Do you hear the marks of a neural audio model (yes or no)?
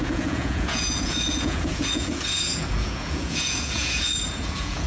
yes